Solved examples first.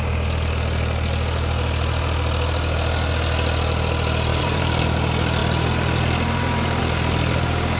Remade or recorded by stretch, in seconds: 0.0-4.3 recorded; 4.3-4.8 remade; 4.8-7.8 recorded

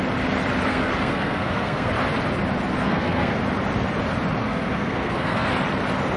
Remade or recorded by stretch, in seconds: 0.0-0.7 recorded; 0.7-1.9 remade; 1.9-2.8 recorded; 2.8-3.4 remade; 3.4-4.4 recorded; 4.4-5.5 remade; 5.5-6.2 recorded

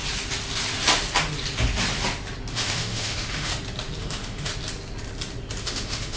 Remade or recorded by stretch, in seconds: 0.0-2.5 recorded; 2.5-3.5 remade; 3.5-4.0 recorded; 4.0-4.5 remade; 4.5-5.6 recorded; 5.6-6.2 remade

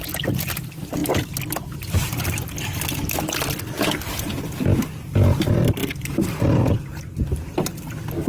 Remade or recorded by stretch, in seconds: 0.0-5.8 recorded; 5.8-7.0 remade; 7.0-8.3 recorded